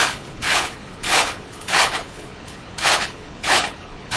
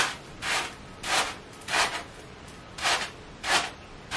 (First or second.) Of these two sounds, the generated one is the first